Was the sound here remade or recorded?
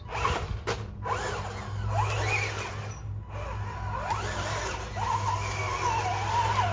recorded